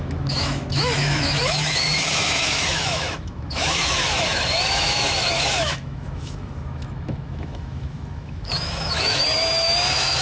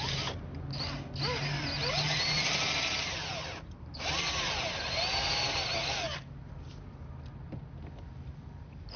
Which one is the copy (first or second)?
first